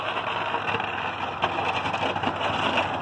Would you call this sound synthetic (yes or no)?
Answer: no